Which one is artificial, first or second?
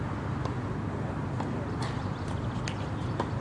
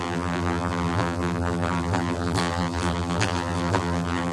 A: second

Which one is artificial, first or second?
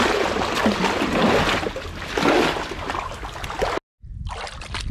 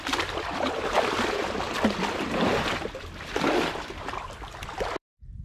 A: second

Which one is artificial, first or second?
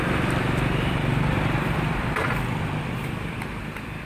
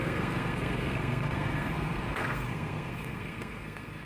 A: second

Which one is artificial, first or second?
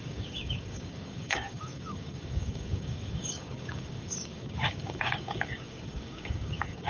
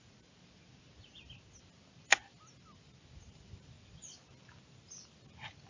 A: first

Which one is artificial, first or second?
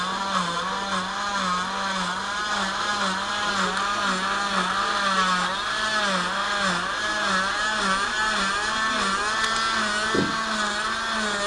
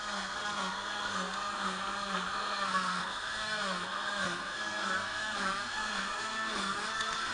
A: second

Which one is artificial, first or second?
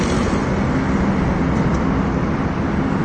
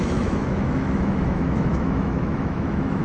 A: second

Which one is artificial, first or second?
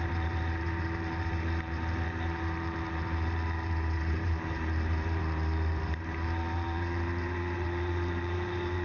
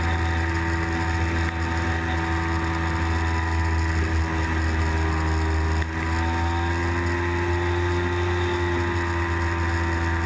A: first